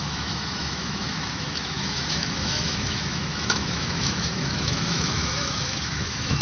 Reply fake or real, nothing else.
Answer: fake